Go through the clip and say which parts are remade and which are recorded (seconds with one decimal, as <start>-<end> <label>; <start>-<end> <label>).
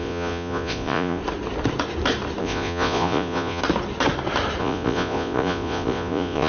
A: 0.0-1.2 remade; 1.2-2.4 recorded; 2.4-3.6 remade; 3.6-4.6 recorded; 4.6-6.5 remade